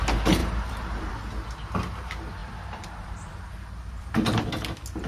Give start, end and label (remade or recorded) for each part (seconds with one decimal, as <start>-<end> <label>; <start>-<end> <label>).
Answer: 0.0-0.4 recorded; 0.4-1.1 remade; 1.1-2.4 recorded; 2.4-4.5 remade; 4.5-5.1 recorded